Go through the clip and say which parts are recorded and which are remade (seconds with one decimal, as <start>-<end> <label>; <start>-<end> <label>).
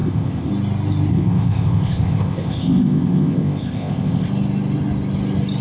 0.0-0.5 remade; 0.5-1.1 recorded; 1.1-4.3 remade; 4.3-5.6 recorded